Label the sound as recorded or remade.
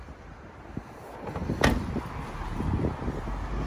recorded